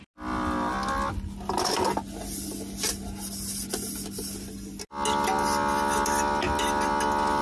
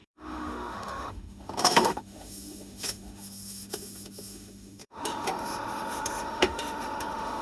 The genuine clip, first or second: first